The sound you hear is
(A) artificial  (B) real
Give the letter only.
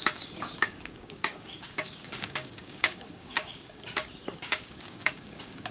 A